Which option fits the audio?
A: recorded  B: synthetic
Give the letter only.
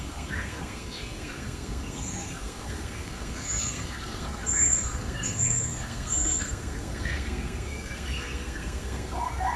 B